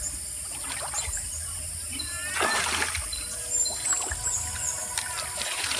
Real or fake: fake